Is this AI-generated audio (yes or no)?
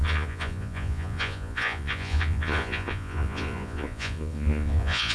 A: yes